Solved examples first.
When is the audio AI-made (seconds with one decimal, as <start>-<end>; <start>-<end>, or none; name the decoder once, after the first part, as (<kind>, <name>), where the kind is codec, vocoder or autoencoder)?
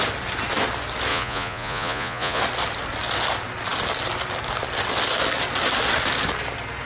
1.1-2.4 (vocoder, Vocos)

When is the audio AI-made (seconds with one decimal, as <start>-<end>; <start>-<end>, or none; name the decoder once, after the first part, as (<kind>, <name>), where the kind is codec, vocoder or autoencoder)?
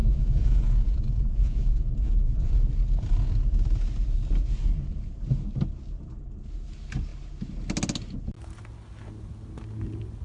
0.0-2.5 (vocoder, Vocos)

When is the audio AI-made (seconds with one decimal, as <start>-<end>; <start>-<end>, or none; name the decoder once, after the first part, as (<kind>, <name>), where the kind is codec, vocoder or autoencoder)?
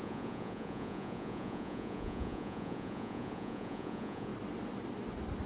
0.0-4.3 (vocoder, Vocos)